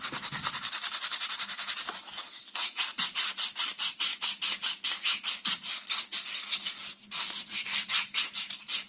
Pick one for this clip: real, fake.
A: fake